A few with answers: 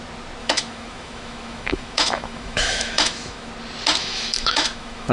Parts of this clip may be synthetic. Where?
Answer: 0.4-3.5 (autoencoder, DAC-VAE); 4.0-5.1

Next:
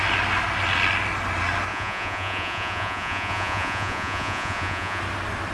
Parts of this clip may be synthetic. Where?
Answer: 1.7-5.0 (vocoder, Vocos)

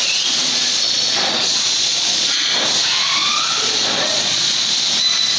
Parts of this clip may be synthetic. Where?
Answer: 0.0-2.5 (vocoder, Vocos); 3.2-4.7

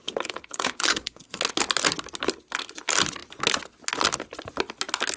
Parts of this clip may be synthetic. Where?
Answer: 0.9-1.4 (codec, SNAC)

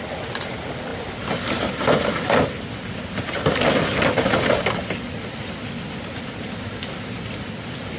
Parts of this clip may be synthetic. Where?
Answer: none

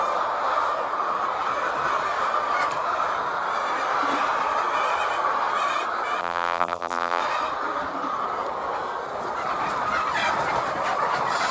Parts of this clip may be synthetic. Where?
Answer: 6.2-7.2 (vocoder, BigVGAN v2)

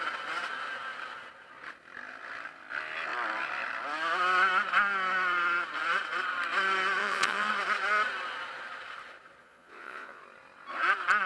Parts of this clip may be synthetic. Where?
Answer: 7.0-7.5 (vocoder, Vocos); 9.4-10.2